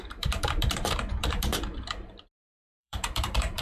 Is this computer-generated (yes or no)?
yes